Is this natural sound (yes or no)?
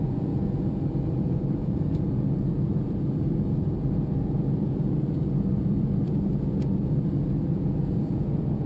no